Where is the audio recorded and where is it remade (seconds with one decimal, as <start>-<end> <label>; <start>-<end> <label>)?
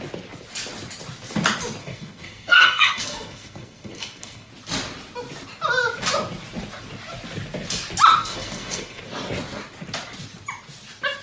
0.0-1.8 recorded; 1.8-4.5 remade; 4.5-8.2 recorded; 8.2-9.0 remade; 9.0-11.2 recorded